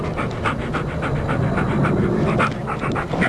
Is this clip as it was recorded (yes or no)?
yes